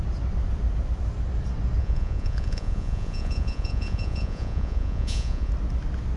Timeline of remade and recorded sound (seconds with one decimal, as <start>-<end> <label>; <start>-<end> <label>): 0.0-1.8 recorded; 1.8-5.5 remade; 5.5-6.2 recorded